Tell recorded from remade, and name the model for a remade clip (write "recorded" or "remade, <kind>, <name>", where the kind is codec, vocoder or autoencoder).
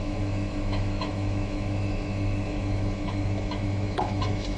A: remade, autoencoder, DAC-VAE